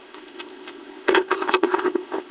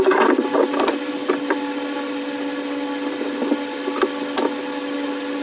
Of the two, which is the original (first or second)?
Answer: second